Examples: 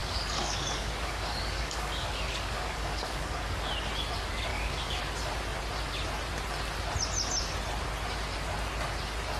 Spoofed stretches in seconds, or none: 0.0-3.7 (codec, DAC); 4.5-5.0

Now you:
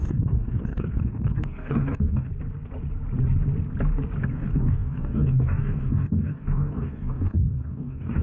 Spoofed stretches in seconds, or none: 0.0-2.3 (codec, DAC); 4.3-8.2

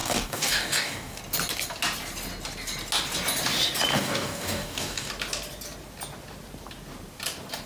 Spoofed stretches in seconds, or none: 0.0-1.2 (codec, DAC); 3.9-5.1

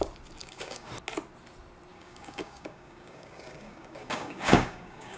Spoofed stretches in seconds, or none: 0.4-0.9 (codec, DAC); 1.9-5.2

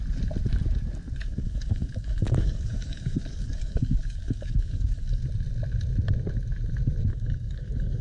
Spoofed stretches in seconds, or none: 1.2-5.2 (codec, DAC); 7.1-8.0

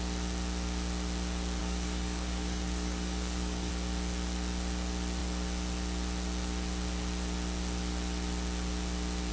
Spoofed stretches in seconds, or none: 1.6-3.7 (codec, DAC)

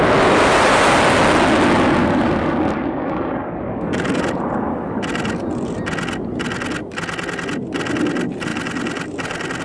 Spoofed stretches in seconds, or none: 2.0-4.2 (codec, DAC)